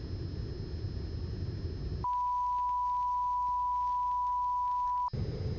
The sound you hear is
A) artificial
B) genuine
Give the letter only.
B